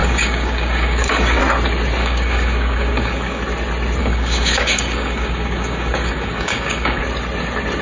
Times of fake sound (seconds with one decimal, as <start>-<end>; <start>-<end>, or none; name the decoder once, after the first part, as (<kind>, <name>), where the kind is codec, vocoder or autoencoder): 0.0-1.4 (codec, DAC); 2.0-3.4; 4.0-7.0